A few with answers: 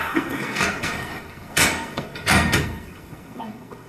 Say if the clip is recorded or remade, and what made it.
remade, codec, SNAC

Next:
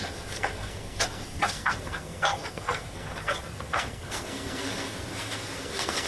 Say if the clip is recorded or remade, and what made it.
remade, codec, SNAC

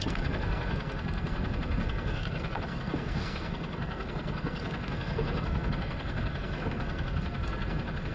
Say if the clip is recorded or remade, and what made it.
remade, codec, SNAC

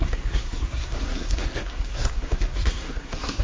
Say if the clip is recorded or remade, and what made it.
remade, codec, SNAC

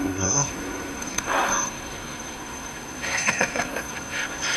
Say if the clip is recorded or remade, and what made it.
remade, codec, SNAC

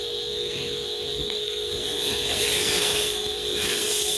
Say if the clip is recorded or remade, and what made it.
remade, codec, SNAC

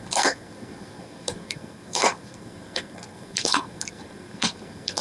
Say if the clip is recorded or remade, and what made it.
remade, codec, SNAC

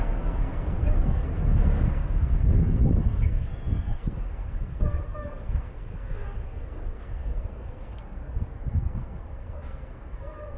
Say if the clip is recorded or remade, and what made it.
remade, codec, SNAC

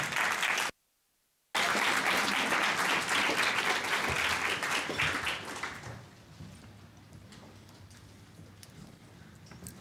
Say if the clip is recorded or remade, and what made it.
recorded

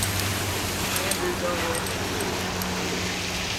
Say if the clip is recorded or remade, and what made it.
recorded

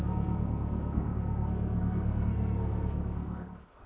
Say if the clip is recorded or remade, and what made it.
remade, codec, SNAC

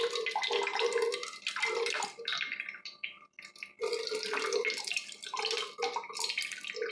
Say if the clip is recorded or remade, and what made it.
recorded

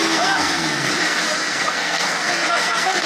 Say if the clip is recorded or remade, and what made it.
remade, codec, SNAC